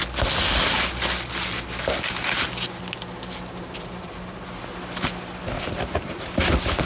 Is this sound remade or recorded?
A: recorded